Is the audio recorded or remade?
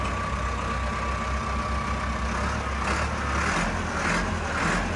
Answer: recorded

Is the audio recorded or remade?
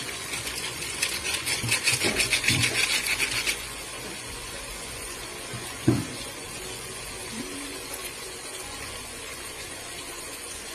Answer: remade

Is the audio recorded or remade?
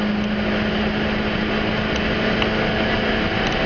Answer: recorded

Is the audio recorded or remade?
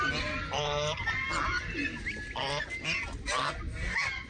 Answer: recorded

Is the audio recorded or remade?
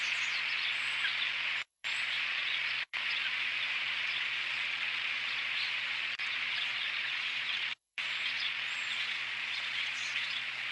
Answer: remade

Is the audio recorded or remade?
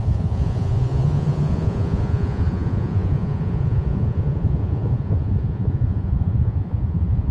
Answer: remade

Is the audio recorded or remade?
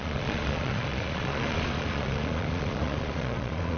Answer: remade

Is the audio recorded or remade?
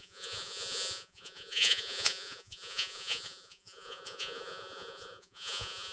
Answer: remade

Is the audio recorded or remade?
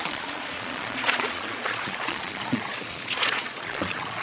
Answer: remade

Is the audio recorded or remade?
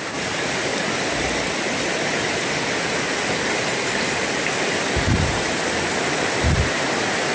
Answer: recorded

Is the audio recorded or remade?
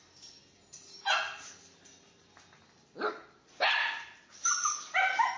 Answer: recorded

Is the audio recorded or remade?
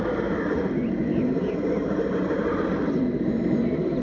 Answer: recorded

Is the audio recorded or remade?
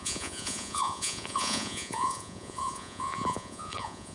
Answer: remade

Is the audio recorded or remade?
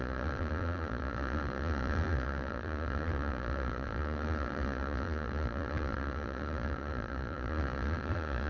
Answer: remade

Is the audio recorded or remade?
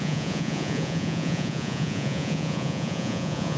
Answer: remade